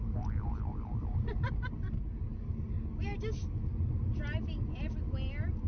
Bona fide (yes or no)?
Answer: yes